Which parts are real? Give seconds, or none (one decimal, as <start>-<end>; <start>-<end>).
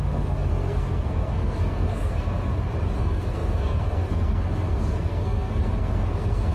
2.5-3.0